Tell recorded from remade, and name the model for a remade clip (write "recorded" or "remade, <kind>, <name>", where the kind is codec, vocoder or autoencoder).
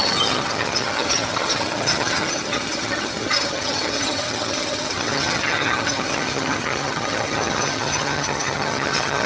remade, vocoder, HiFi-GAN